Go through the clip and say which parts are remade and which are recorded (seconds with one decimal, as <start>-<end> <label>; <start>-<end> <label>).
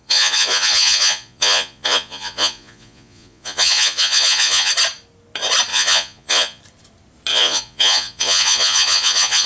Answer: 0.0-4.7 remade; 4.7-5.7 recorded; 5.7-6.6 remade; 6.6-7.3 recorded; 7.3-9.5 remade